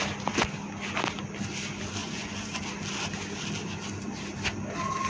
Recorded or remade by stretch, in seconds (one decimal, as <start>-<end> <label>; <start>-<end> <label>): 0.0-2.0 recorded; 2.0-2.6 remade; 2.6-5.1 recorded